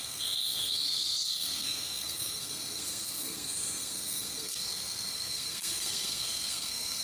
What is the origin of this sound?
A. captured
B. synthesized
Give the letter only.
B